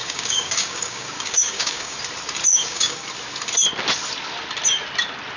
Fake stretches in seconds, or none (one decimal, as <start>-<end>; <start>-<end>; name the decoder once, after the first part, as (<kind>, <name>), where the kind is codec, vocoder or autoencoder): 0.0-2.0 (codec, DAC); 2.5-3.1